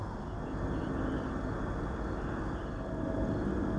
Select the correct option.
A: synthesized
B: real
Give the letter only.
B